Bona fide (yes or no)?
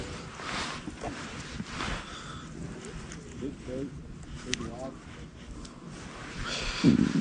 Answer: yes